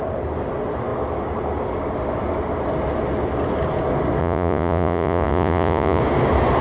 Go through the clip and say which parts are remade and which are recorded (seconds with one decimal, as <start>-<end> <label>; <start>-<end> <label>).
0.0-4.2 recorded; 4.2-6.0 remade; 6.0-6.6 recorded